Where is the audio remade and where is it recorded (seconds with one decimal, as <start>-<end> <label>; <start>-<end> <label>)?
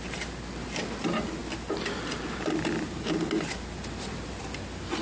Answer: 0.0-5.0 recorded